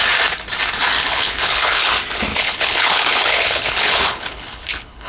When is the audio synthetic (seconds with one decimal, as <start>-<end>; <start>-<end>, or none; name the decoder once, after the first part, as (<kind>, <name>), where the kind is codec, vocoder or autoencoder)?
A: 1.0-1.9 (codec, HILCodec); 2.3-5.1